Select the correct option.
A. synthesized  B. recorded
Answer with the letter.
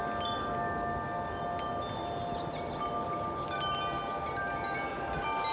B